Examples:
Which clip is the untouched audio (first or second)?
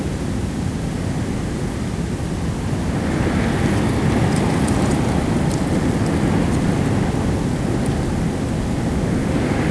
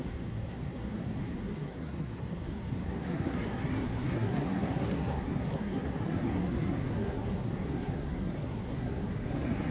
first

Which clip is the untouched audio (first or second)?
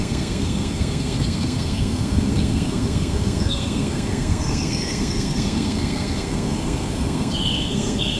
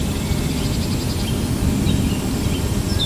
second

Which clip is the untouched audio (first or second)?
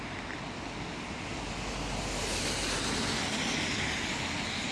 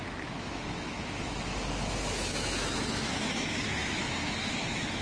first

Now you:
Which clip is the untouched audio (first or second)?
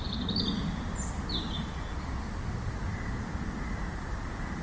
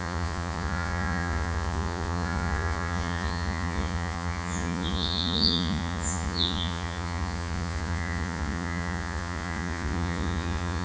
first